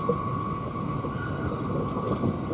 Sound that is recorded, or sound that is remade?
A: recorded